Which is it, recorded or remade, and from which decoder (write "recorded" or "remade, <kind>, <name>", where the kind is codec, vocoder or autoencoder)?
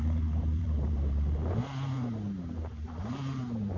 remade, vocoder, BigVGAN v2